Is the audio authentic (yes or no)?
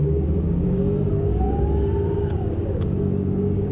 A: no